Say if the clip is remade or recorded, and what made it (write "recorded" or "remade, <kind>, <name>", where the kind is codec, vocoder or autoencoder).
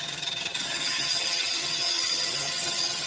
remade, vocoder, HiFi-GAN